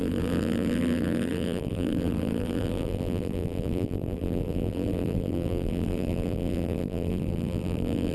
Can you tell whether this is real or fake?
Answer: fake